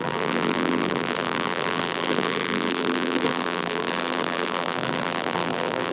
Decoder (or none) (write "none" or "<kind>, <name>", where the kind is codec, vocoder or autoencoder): vocoder, BigVGAN v2